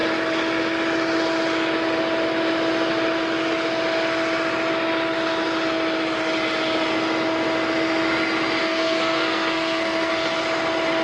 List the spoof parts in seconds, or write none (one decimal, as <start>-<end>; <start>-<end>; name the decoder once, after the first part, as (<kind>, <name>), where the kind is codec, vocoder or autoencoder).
8.6-10.1 (codec, SNAC)